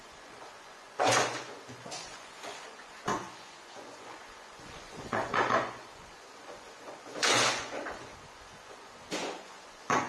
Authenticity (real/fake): fake